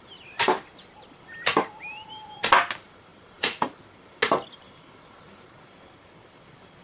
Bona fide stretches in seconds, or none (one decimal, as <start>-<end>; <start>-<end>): 0.0-3.1; 3.9-6.8